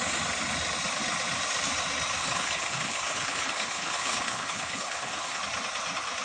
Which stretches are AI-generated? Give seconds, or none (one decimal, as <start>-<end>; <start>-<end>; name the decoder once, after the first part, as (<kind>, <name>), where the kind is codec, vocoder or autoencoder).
2.2-5.4 (codec, HILCodec)